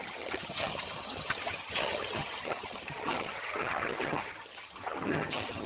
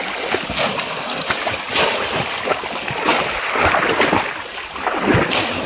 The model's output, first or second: first